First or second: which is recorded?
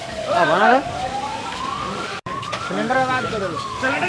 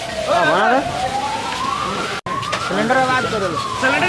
second